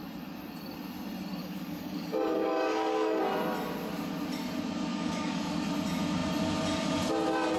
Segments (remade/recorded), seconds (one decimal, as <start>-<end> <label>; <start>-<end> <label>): 0.0-1.4 recorded; 1.4-3.2 remade; 3.2-4.9 recorded; 4.9-5.5 remade; 5.5-7.6 recorded